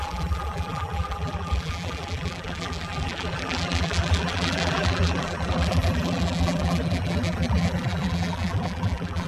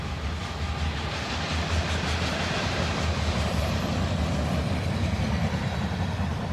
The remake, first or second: first